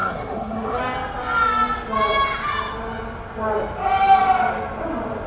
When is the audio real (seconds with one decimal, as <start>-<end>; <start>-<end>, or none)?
0.8-5.3